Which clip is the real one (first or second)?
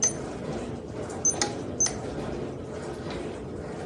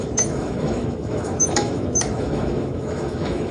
first